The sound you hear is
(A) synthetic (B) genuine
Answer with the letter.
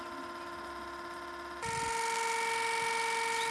B